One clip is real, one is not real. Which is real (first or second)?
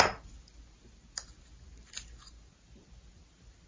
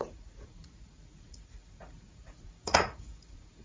first